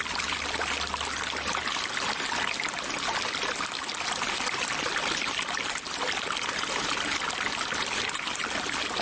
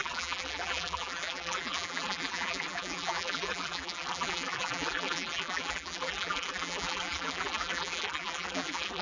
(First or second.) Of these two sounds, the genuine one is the first